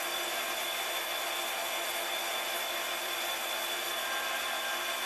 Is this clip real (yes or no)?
yes